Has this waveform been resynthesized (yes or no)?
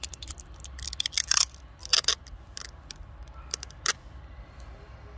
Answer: no